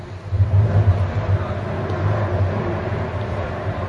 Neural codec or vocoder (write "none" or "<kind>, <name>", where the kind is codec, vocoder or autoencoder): none